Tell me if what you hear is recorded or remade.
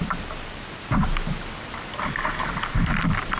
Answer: recorded